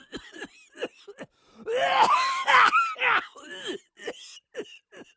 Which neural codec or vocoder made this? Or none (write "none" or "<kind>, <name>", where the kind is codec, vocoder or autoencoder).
none